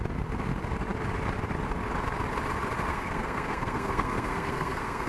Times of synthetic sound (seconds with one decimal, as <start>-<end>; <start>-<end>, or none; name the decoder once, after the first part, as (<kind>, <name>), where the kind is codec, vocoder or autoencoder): 2.9-5.1 (codec, SNAC)